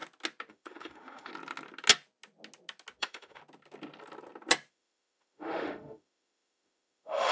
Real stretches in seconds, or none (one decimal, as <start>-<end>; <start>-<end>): 0.0-0.5; 1.3-3.0; 3.4-4.7